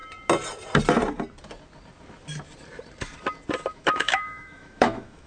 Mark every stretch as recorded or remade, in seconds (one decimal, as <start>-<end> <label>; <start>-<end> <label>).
0.0-3.7 recorded; 3.7-5.3 remade